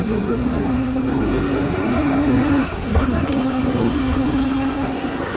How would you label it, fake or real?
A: fake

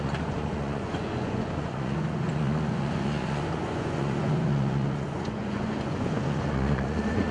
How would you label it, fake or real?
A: fake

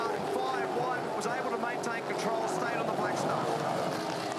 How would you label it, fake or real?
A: real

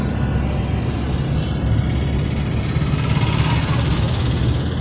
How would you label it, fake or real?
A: real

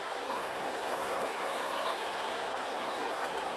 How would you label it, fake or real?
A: fake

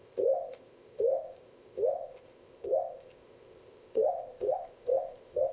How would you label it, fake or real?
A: fake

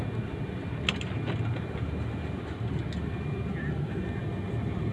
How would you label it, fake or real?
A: real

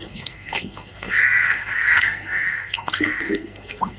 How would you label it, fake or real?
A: fake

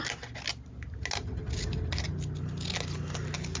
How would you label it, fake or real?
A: real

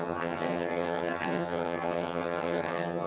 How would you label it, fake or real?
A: fake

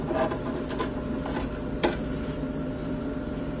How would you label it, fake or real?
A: real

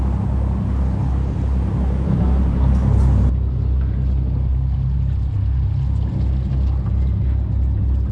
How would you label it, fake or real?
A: real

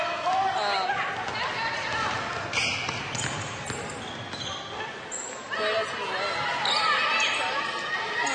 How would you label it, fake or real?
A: real